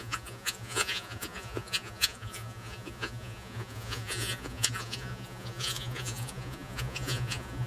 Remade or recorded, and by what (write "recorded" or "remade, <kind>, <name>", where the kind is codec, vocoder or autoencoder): remade, vocoder, Vocos